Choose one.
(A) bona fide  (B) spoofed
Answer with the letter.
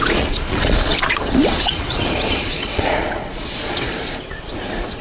B